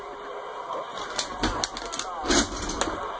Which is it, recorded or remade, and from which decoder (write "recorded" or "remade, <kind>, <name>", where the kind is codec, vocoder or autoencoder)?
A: recorded